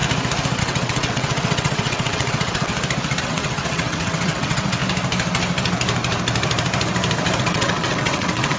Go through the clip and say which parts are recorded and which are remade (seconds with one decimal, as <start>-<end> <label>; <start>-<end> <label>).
0.0-0.6 recorded; 0.6-2.7 remade; 2.7-3.2 recorded; 3.2-4.8 remade; 4.8-7.4 recorded; 7.4-8.6 remade